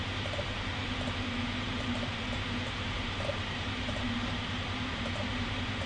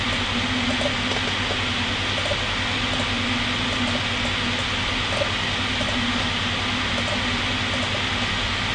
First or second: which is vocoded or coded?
first